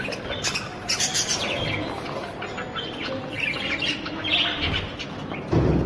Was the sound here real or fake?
real